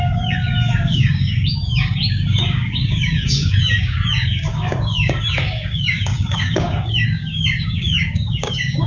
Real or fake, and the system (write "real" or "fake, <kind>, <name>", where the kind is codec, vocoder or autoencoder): fake, codec, DAC